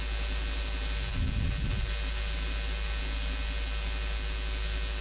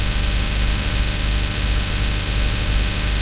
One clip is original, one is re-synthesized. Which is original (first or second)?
first